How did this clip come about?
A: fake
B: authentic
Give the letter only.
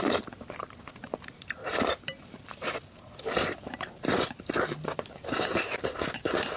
A